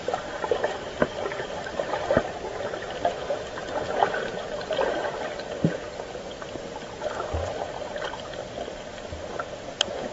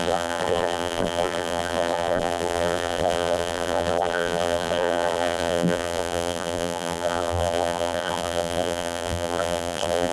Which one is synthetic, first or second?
second